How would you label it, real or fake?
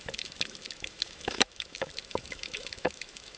fake